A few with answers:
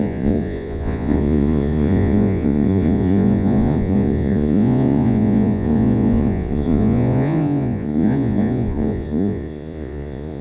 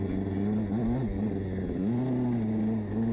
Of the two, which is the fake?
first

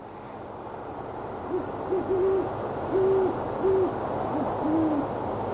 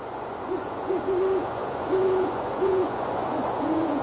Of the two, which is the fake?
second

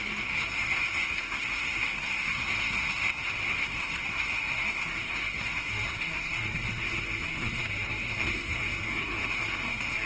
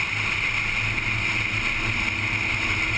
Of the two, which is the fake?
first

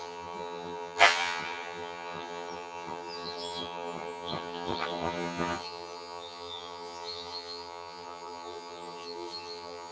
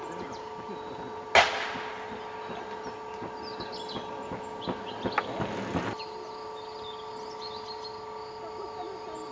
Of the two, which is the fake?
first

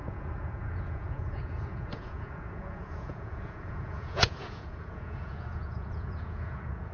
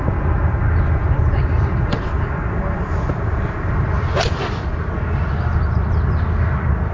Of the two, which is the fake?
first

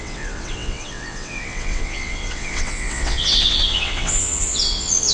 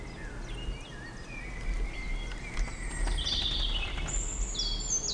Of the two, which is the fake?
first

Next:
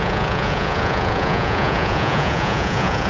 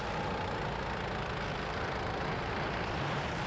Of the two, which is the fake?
first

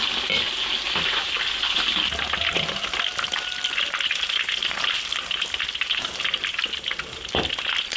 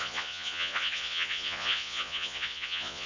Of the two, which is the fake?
second